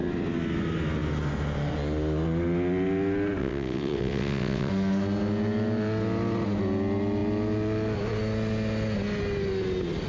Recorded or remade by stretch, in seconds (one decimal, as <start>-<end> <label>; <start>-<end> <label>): 0.0-3.4 recorded; 3.4-4.7 remade; 4.7-10.1 recorded